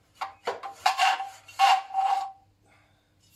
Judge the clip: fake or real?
fake